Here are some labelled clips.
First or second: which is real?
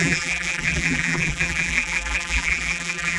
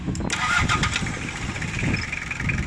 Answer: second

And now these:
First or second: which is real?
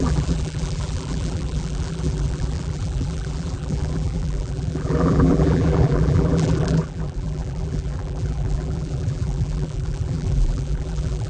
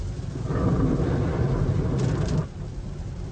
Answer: second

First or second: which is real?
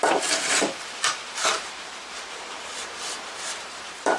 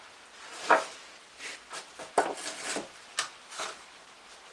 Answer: second